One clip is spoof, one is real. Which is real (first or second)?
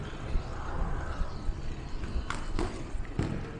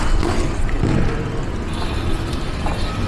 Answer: second